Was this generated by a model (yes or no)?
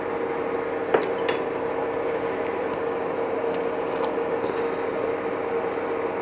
no